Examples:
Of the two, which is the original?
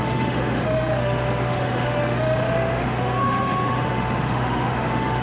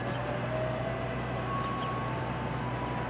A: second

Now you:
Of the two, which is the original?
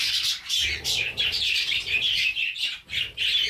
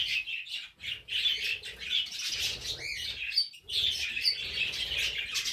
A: second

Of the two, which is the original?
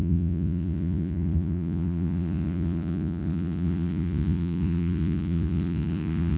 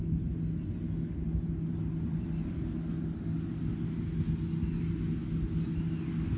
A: second